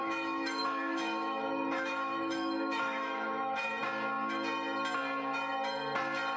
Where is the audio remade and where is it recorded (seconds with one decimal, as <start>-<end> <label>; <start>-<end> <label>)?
0.0-3.8 remade; 3.8-6.4 recorded